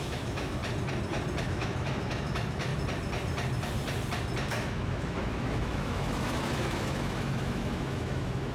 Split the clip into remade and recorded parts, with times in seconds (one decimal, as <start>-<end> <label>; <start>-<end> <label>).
0.0-0.6 remade; 0.6-1.4 recorded; 1.4-2.7 remade; 2.7-4.5 recorded; 4.5-8.5 remade